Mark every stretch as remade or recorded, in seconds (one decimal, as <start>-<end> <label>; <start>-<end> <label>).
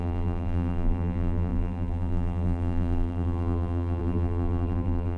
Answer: 0.0-5.2 remade